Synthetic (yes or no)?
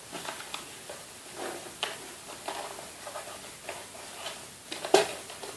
no